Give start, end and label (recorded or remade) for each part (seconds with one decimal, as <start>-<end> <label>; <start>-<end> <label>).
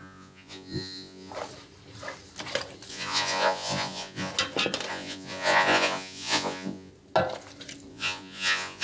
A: 0.0-1.3 remade; 1.3-2.9 recorded; 2.9-4.3 remade; 4.3-4.9 recorded; 4.9-6.9 remade; 6.9-7.9 recorded; 7.9-8.8 remade